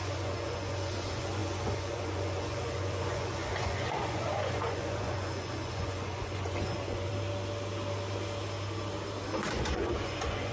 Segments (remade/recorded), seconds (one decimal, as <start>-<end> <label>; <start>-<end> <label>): 0.0-7.1 remade; 7.1-9.5 recorded; 9.5-10.5 remade